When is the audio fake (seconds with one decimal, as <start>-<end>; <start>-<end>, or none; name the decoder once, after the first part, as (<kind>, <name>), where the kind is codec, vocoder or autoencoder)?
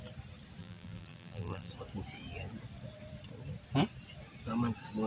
0.6-1.7 (vocoder, BigVGAN v2)